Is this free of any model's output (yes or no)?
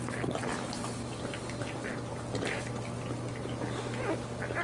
yes